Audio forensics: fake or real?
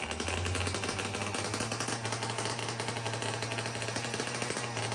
real